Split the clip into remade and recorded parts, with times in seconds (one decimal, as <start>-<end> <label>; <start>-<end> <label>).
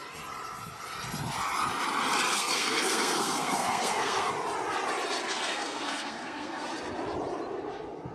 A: 0.0-2.3 recorded; 2.3-4.3 remade; 4.3-5.2 recorded; 5.2-6.7 remade; 6.7-8.1 recorded